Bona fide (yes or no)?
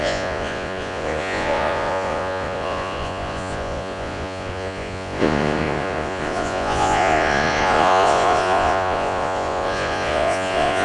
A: no